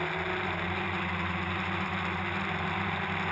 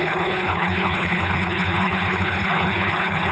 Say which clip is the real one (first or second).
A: first